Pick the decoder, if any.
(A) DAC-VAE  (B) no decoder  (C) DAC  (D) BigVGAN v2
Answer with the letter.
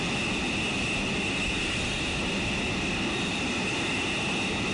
B